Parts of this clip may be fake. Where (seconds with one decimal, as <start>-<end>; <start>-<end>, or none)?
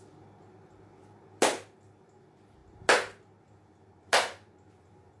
none